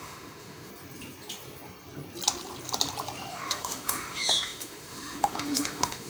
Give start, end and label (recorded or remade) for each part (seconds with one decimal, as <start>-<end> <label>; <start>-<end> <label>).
0.0-0.7 remade; 0.7-3.3 recorded; 3.3-6.1 remade